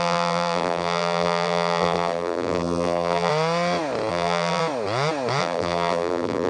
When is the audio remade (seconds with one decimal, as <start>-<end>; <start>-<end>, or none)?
0.0-3.3; 4.1-4.6; 5.4-6.5